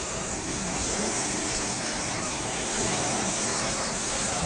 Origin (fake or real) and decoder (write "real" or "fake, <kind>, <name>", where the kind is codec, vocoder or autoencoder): fake, codec, SNAC